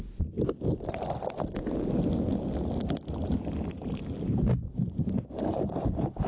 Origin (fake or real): real